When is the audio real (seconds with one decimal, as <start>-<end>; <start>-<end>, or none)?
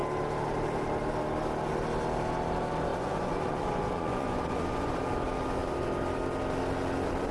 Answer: 0.0-2.9; 4.9-7.3